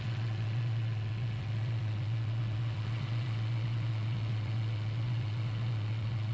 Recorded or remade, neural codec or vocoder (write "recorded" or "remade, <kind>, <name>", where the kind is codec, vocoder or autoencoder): remade, vocoder, WaveNeXt